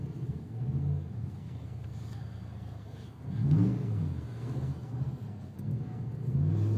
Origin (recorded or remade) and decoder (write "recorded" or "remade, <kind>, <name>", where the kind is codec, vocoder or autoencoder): remade, codec, SNAC